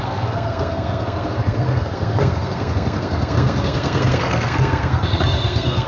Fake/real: fake